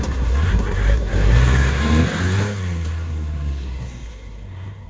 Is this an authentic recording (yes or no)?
no